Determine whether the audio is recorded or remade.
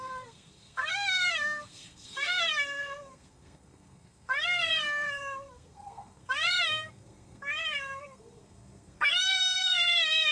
remade